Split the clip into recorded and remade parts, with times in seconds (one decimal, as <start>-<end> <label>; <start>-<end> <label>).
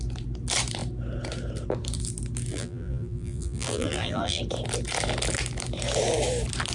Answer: 0.0-2.5 recorded; 2.5-4.4 remade; 4.4-6.7 recorded